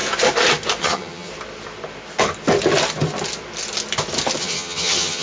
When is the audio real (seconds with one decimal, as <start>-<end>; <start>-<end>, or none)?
0.0-0.8; 1.3-4.4